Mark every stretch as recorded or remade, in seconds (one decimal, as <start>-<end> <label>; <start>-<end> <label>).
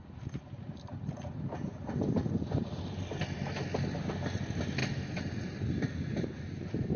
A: 0.0-7.0 recorded